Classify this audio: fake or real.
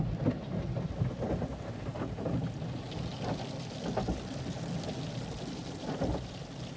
real